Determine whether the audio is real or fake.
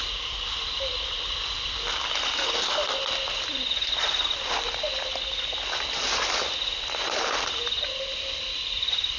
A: real